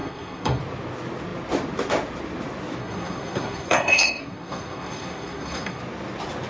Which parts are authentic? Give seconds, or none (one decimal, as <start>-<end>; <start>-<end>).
0.6-2.8; 5.8-6.5